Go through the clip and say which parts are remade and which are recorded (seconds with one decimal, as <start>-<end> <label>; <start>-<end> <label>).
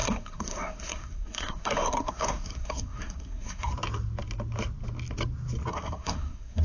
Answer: 0.0-3.7 remade; 3.7-5.7 recorded; 5.7-6.6 remade